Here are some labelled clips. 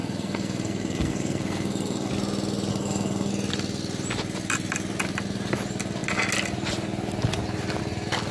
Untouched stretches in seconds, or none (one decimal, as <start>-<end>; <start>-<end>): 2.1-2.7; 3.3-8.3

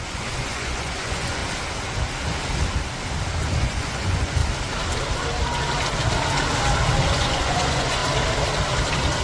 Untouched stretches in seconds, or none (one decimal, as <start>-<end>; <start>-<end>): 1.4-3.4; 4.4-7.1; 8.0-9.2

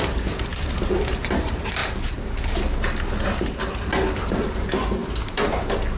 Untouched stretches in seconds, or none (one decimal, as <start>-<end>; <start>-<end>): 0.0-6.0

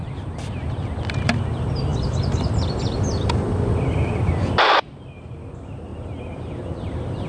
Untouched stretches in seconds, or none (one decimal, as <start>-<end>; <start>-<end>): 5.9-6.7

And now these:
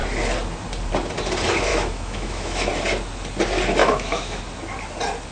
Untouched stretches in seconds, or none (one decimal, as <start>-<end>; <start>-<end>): 0.0-1.7; 2.7-3.8; 4.4-5.3

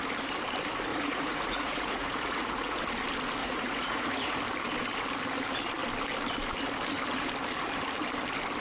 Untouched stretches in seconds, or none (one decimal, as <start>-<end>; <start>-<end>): 0.0-0.9; 2.8-3.4; 4.4-8.6